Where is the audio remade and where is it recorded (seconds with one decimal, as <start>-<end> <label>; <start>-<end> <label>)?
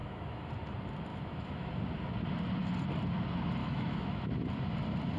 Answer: 0.0-0.5 remade; 0.5-1.1 recorded; 1.1-1.7 remade; 1.7-3.6 recorded; 3.6-4.2 remade; 4.2-5.2 recorded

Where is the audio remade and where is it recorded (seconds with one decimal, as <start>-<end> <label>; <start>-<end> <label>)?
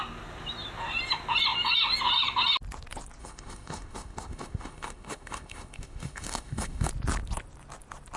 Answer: 0.0-3.2 recorded; 3.2-6.9 remade; 6.9-8.2 recorded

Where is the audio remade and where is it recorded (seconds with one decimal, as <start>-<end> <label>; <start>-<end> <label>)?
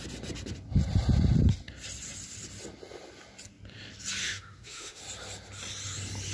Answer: 0.0-4.2 recorded; 4.2-5.0 remade; 5.0-6.3 recorded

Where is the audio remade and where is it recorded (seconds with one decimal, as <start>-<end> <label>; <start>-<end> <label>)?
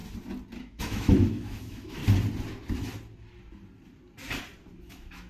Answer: 0.0-0.6 recorded; 0.6-2.0 remade; 2.0-4.8 recorded; 4.8-5.3 remade